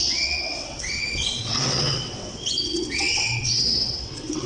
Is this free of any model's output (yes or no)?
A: no